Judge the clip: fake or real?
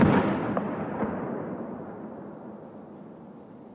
real